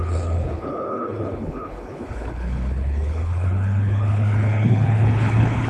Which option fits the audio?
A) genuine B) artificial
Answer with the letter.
B